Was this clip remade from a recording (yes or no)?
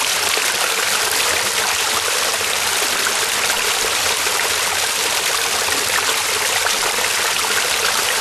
no